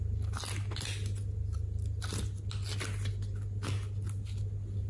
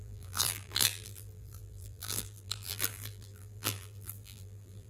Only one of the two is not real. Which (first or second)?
second